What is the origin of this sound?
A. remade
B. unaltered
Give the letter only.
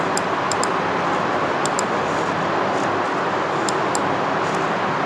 B